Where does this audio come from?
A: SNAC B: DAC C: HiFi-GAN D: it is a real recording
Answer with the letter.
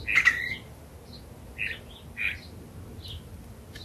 D